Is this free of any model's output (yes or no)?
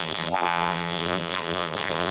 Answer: no